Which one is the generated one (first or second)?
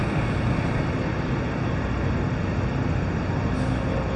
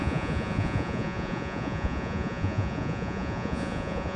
second